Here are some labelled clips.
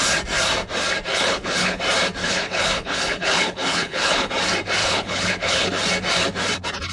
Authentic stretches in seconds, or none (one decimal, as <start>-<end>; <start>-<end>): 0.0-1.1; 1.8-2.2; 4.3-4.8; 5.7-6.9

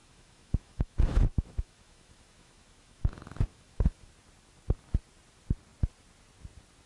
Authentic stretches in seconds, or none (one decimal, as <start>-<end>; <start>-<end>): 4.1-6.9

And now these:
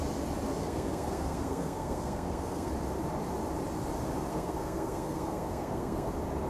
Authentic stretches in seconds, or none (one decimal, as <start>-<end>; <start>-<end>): 0.0-0.6; 2.7-4.3; 6.1-6.5